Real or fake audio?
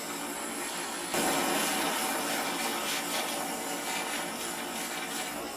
real